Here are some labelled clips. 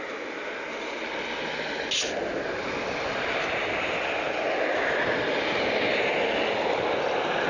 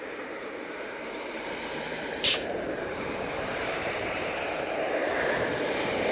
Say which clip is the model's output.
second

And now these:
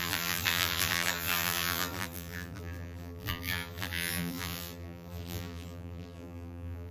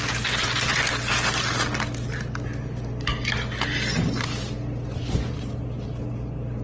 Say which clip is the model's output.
first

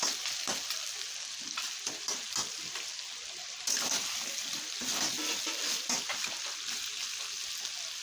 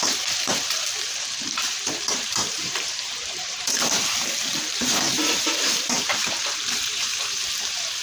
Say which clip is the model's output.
second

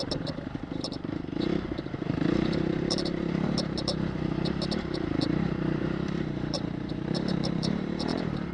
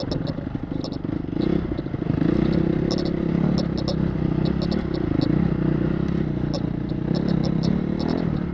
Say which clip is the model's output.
first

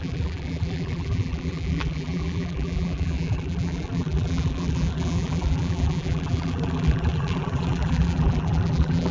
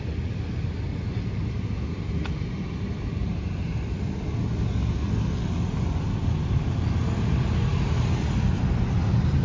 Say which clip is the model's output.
first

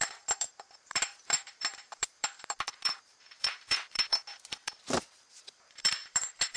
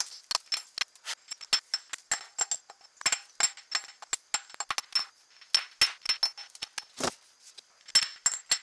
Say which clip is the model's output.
first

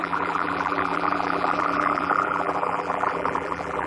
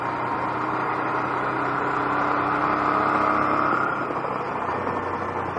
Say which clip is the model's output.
first